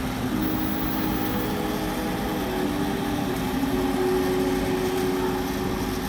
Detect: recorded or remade recorded